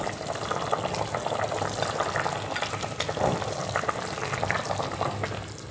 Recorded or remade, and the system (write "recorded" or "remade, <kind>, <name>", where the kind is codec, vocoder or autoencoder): recorded